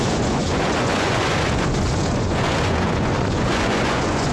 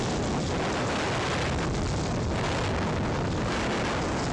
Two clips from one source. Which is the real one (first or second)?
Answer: second